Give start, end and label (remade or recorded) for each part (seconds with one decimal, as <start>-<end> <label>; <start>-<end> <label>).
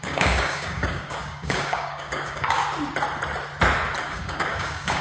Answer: 0.0-2.6 remade; 2.6-4.0 recorded; 4.0-5.0 remade